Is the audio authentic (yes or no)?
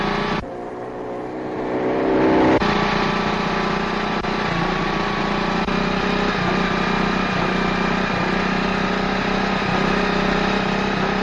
yes